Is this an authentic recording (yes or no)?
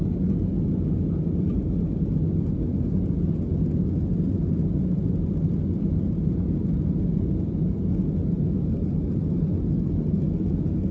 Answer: yes